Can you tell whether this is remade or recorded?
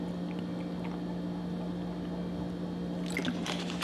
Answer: recorded